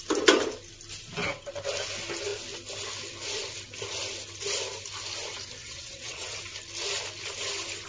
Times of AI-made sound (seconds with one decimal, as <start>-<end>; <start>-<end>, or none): 5.6-6.4